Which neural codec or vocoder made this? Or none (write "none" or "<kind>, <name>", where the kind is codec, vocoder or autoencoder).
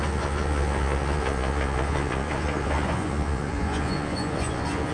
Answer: vocoder, Vocos